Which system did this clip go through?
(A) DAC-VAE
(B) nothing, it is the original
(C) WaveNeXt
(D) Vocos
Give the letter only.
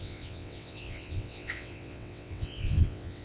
C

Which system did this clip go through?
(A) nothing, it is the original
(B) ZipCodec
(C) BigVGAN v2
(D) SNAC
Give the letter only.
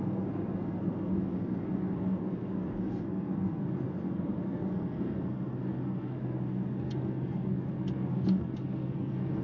D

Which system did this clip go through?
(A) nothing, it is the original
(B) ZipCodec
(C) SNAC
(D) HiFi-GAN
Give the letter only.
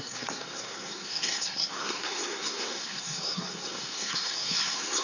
C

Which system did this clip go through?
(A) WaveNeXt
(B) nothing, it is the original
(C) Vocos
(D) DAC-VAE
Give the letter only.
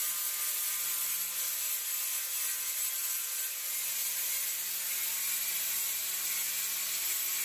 B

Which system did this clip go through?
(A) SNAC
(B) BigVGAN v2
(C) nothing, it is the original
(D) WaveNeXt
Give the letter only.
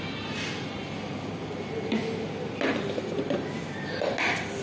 C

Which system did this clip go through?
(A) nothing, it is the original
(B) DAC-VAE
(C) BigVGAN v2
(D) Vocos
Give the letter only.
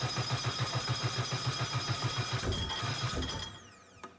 A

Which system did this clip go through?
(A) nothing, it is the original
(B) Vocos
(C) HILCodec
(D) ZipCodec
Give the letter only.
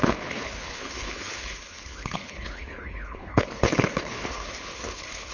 C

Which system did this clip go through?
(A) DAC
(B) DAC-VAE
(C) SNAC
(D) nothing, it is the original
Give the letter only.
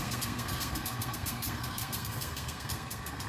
C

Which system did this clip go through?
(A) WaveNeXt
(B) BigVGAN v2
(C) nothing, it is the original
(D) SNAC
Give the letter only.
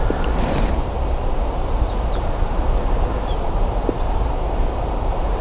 B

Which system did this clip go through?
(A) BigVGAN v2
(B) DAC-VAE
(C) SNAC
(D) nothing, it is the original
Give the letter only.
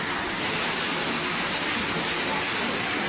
D